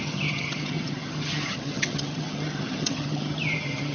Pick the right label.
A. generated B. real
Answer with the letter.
A